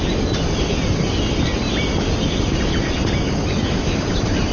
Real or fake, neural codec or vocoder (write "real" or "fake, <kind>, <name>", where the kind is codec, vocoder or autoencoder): real